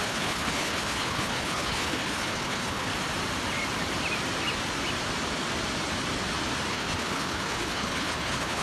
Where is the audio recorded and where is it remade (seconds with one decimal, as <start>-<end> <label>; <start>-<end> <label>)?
0.0-2.9 remade; 2.9-6.7 recorded; 6.7-8.6 remade